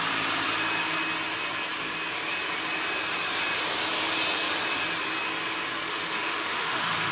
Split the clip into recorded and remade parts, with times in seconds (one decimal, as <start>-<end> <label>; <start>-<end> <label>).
0.0-5.9 recorded; 5.9-7.1 remade